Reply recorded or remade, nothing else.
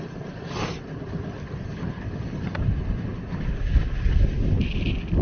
recorded